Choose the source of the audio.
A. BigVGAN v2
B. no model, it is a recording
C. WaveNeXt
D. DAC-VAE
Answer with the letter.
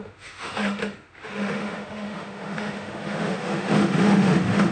D